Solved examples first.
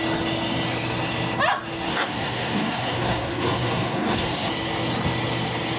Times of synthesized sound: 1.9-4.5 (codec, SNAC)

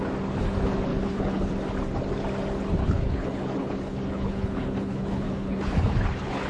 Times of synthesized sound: 0.9-1.5 (codec, HILCodec); 2.8-6.5